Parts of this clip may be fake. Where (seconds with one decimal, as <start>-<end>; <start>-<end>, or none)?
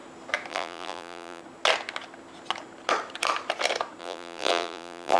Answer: 0.5-1.4; 4.0-5.2